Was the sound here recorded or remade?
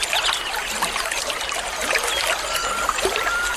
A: recorded